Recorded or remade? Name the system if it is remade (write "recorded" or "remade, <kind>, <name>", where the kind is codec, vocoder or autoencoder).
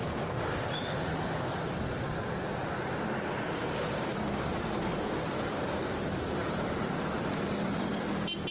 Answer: remade, vocoder, BigVGAN v2